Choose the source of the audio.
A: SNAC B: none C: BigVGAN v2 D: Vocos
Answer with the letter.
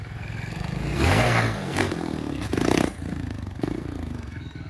A